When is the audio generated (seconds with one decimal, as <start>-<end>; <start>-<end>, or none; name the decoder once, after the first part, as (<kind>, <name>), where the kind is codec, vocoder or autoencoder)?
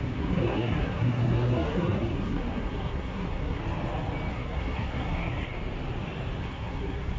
0.0-3.6 (codec, SNAC); 4.3-5.5; 6.4-7.2